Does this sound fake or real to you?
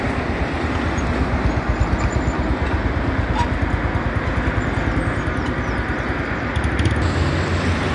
real